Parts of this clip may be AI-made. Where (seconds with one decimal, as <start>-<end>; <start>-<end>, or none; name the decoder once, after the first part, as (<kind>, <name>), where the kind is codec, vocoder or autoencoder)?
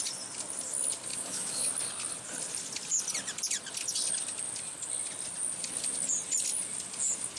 1.1-1.7 (autoencoder, DAC-VAE)